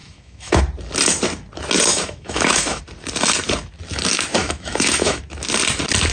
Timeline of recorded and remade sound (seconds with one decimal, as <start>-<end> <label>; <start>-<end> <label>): 0.0-0.6 remade; 0.6-1.9 recorded; 1.9-2.8 remade; 2.8-4.4 recorded; 4.4-5.2 remade; 5.2-6.1 recorded